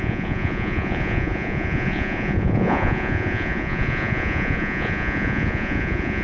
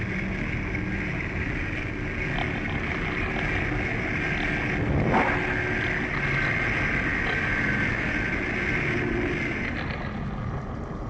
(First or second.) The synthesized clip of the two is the first